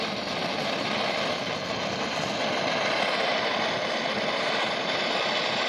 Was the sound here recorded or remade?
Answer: remade